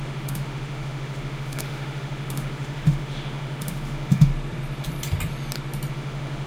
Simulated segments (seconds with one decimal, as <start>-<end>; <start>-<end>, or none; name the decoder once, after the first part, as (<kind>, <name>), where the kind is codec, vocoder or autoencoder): 0.0-4.3 (autoencoder, DAC-VAE); 5.9-6.5